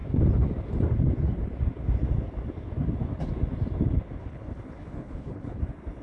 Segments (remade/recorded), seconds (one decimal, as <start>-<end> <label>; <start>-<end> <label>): 0.0-4.2 recorded; 4.2-5.6 remade; 5.6-6.0 recorded